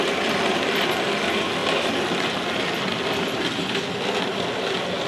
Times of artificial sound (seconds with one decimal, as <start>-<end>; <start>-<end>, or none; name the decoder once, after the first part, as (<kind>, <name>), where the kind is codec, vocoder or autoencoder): none